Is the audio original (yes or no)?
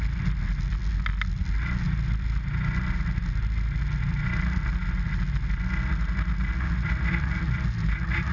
yes